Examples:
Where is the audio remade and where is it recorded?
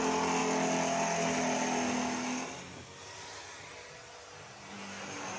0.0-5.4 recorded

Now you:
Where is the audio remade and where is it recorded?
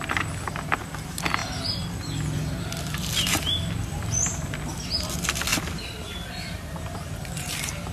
0.0-5.5 recorded; 5.5-7.4 remade; 7.4-7.9 recorded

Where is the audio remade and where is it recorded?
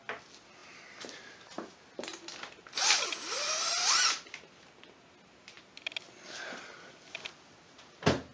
0.0-8.3 recorded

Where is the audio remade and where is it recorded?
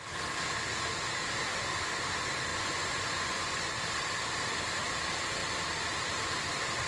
0.0-2.5 recorded; 2.5-3.7 remade; 3.7-6.9 recorded